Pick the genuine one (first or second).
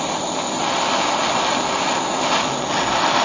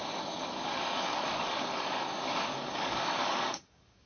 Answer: first